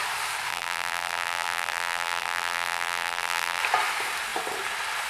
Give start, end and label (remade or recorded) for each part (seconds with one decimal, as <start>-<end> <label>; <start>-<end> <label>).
0.0-0.5 recorded; 0.5-3.6 remade; 3.6-5.1 recorded